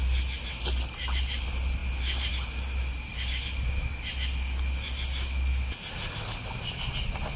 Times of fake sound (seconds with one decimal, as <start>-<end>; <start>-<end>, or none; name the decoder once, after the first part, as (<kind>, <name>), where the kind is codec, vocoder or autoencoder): none